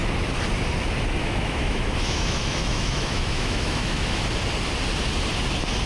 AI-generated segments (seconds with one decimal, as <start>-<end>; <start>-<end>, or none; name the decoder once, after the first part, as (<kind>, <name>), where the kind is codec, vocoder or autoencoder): 1.2-4.2 (autoencoder, DAC-VAE)